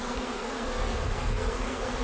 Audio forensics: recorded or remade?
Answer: remade